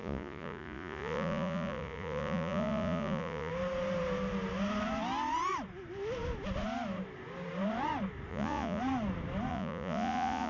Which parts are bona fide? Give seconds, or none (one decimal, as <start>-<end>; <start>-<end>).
3.5-8.3; 8.8-9.5

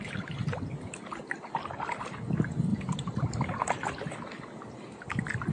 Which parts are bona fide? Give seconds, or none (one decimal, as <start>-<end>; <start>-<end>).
0.0-5.5

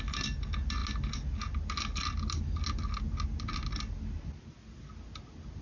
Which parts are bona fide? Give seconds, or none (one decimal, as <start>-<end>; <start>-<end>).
0.0-5.6